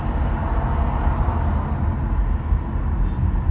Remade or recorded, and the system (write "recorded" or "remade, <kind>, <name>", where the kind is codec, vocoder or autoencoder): recorded